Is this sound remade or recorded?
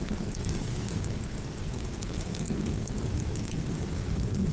remade